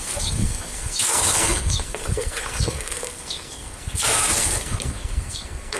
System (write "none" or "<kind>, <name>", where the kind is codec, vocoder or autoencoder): codec, SNAC